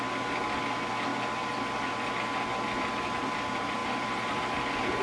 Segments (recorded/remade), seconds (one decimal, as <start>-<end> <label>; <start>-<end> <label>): 0.0-5.0 recorded